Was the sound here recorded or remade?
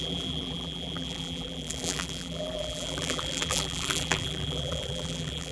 remade